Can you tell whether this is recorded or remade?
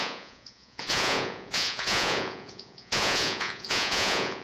remade